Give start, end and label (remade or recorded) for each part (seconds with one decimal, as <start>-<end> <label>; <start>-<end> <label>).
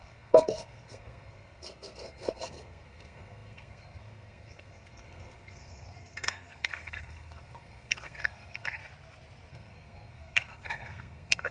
0.0-8.8 remade; 8.8-9.5 recorded; 9.5-11.5 remade